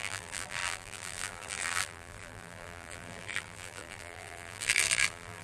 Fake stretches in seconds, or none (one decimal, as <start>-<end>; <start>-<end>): 0.0-5.4